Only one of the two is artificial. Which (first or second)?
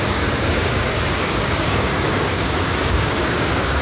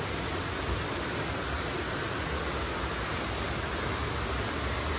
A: first